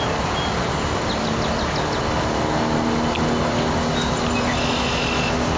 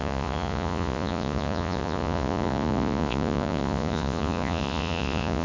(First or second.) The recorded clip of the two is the first